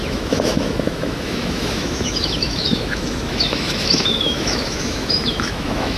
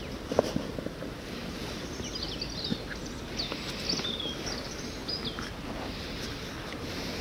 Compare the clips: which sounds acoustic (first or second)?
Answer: second